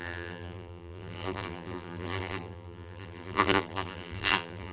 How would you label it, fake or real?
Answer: fake